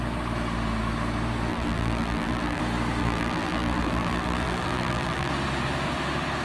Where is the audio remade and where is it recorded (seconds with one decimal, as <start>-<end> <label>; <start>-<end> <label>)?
0.0-1.5 recorded; 1.5-2.6 remade; 2.6-3.0 recorded; 3.0-5.3 remade; 5.3-6.4 recorded